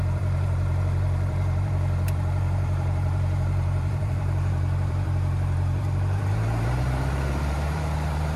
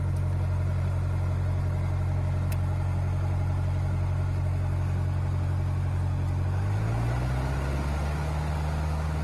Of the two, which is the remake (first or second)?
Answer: first